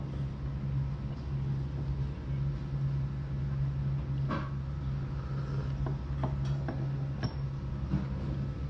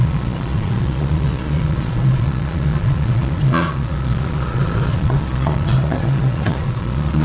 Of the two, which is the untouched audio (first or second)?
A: first